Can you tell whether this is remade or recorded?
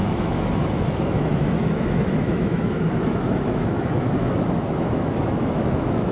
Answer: remade